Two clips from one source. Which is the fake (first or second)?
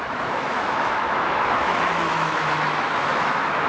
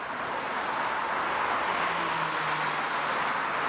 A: first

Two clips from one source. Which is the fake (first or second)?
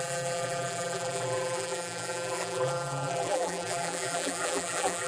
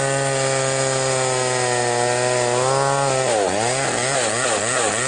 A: first